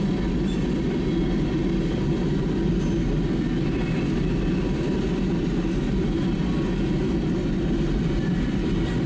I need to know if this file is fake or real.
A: real